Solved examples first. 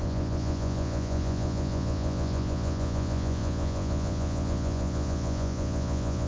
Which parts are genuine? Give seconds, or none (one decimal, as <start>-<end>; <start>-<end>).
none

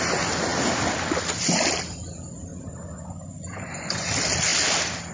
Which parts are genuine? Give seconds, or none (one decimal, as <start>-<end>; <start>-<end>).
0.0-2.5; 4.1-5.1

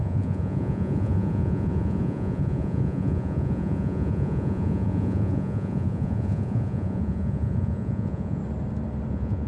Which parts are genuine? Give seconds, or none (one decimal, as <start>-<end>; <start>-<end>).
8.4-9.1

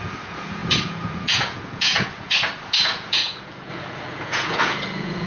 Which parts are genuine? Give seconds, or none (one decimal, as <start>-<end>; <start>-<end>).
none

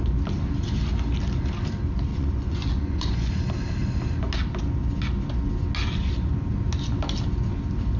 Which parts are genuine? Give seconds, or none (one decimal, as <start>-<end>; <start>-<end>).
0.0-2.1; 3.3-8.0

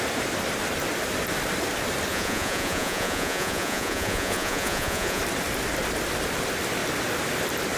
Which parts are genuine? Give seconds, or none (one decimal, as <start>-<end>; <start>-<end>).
0.0-2.1; 5.2-7.8

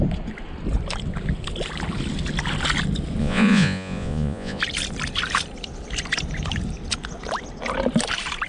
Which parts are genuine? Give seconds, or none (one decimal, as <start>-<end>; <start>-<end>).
0.0-3.2; 4.6-8.5

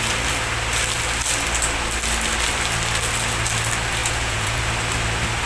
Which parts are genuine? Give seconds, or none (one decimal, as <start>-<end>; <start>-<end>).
0.0-4.0; 4.6-5.5